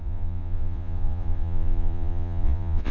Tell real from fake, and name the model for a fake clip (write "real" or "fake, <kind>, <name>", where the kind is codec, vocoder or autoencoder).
fake, vocoder, Vocos